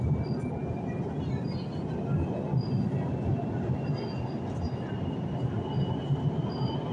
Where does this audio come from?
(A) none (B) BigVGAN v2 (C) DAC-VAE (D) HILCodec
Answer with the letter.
A